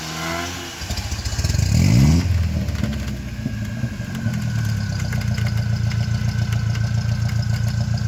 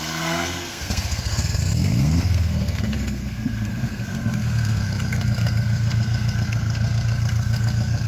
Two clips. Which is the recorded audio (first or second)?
first